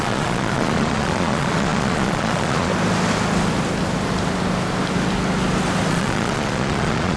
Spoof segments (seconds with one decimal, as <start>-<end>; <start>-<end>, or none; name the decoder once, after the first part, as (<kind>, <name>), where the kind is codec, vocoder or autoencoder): 0.0-2.7 (vocoder, Vocos); 5.9-7.2